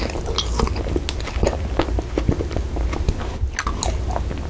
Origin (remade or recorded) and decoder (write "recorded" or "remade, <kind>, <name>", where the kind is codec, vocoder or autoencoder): recorded